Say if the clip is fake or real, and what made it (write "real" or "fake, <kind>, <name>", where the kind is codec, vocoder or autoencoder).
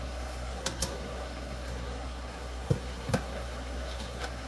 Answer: fake, codec, SNAC